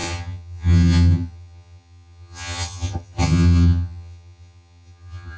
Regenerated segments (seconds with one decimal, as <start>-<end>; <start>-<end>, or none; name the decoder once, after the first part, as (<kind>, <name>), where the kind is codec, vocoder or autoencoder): 0.0-5.4 (vocoder, HiFi-GAN)